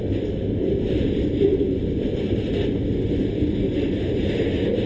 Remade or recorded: recorded